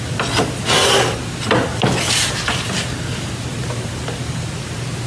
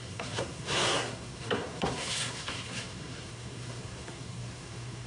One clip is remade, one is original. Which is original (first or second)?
first